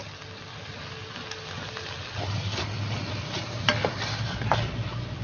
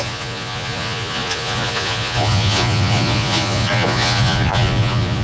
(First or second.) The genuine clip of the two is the first